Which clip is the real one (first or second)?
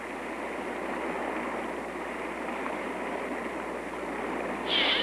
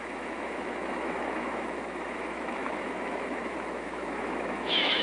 first